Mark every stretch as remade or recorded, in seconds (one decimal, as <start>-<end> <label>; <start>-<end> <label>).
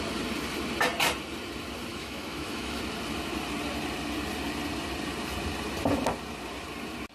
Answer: 0.0-1.9 recorded; 1.9-2.8 remade; 2.8-7.1 recorded